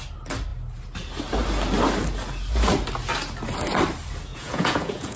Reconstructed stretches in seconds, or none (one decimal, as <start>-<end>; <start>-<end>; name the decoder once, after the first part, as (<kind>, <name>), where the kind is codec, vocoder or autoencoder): 4.3-5.2 (vocoder, Vocos)